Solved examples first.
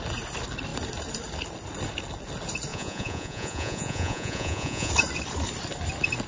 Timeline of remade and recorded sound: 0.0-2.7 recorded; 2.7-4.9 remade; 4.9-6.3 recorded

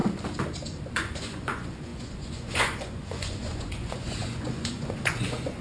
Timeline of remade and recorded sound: 0.0-0.9 recorded; 0.9-5.6 remade

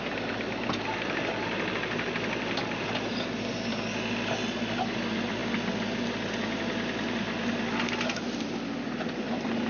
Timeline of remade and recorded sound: 0.0-9.7 recorded

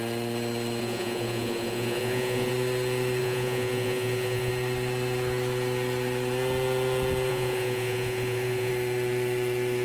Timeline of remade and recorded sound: 0.0-0.8 recorded; 0.8-2.5 remade; 2.5-3.2 recorded; 3.2-4.5 remade; 4.5-7.3 recorded; 7.3-8.7 remade; 8.7-9.8 recorded

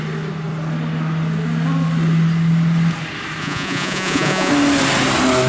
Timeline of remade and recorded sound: 0.0-3.4 recorded; 3.4-4.5 remade; 4.5-5.5 recorded

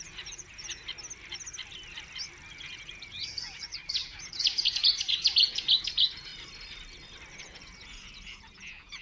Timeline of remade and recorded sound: 0.0-0.8 remade; 0.8-2.6 recorded; 2.6-6.3 remade; 6.3-7.3 recorded; 7.3-9.0 remade

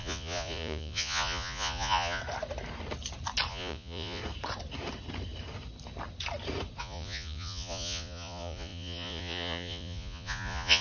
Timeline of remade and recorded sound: 0.0-2.2 remade; 2.2-3.5 recorded; 3.5-4.2 remade; 4.2-6.8 recorded; 6.8-10.8 remade